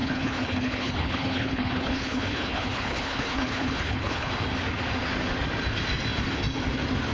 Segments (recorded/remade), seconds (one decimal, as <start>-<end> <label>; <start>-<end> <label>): 0.0-4.3 remade; 4.3-7.1 recorded